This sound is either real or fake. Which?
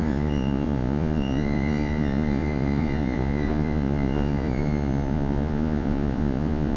fake